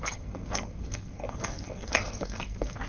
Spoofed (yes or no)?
yes